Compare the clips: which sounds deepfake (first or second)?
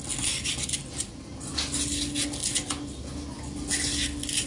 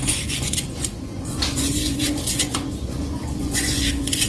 second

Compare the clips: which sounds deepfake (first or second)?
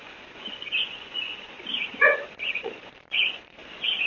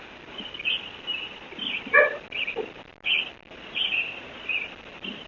first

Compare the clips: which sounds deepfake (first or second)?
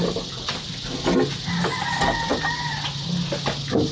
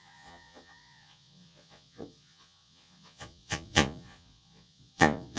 second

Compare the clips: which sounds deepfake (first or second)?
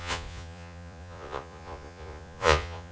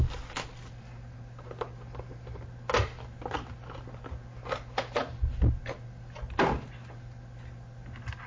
first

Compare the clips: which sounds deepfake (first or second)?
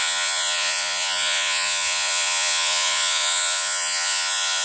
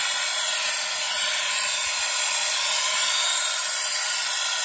first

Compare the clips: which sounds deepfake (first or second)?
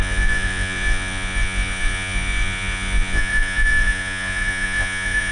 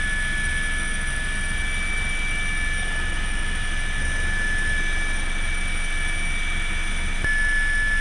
first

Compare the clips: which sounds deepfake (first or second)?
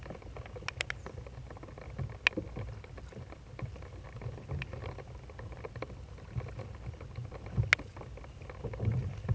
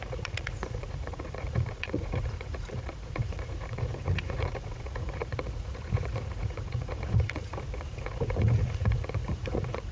second